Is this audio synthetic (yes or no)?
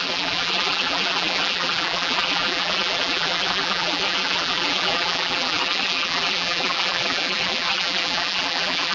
yes